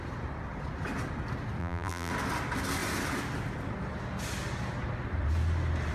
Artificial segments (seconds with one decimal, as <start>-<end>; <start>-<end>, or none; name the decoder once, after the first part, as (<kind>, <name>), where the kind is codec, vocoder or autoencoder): 1.6-2.1 (vocoder, BigVGAN v2)